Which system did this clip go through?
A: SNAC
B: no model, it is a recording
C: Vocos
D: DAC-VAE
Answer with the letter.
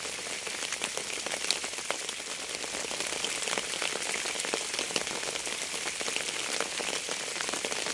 B